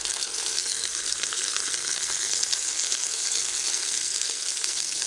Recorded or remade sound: remade